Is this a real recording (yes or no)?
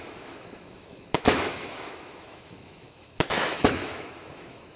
no